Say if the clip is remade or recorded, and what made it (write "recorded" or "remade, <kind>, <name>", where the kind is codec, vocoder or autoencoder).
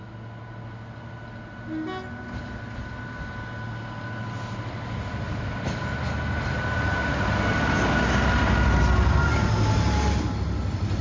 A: recorded